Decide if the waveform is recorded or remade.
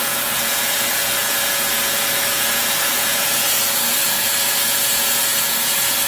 remade